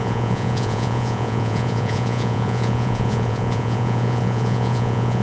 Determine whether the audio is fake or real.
fake